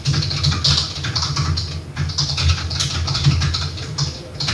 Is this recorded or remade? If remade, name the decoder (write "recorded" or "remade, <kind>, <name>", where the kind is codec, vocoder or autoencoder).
recorded